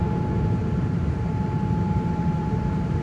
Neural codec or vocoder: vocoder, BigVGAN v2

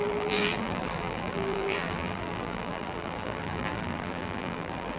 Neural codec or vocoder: vocoder, BigVGAN v2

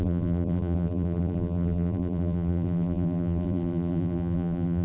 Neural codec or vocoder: vocoder, BigVGAN v2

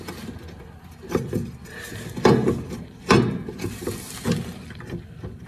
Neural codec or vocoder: vocoder, BigVGAN v2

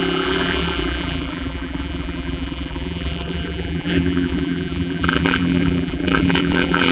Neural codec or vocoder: vocoder, BigVGAN v2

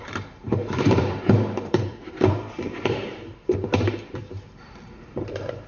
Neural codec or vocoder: vocoder, BigVGAN v2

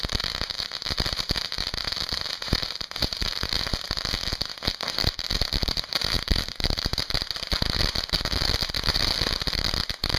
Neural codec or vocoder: vocoder, BigVGAN v2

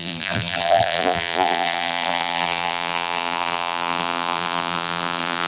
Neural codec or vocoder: vocoder, BigVGAN v2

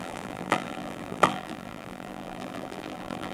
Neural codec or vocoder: vocoder, BigVGAN v2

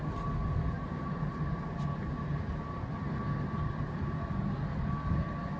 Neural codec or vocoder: none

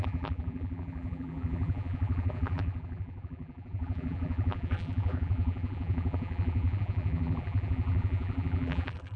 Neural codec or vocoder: vocoder, BigVGAN v2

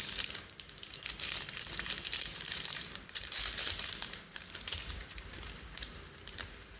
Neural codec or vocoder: vocoder, BigVGAN v2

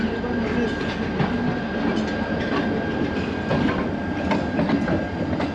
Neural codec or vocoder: none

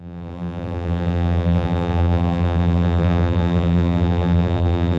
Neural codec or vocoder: vocoder, BigVGAN v2